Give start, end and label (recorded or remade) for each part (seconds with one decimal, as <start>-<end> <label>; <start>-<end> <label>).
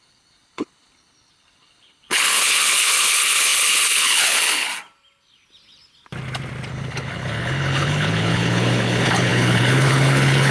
0.0-4.7 remade; 4.7-6.7 recorded; 6.7-10.5 remade